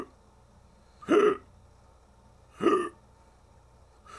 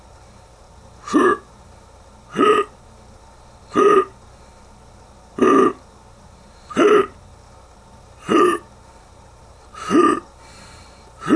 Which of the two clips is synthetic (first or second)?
second